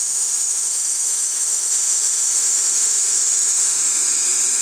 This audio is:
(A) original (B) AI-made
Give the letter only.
B